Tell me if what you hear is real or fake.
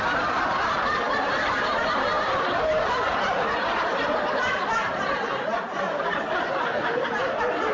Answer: fake